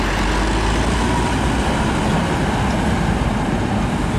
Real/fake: real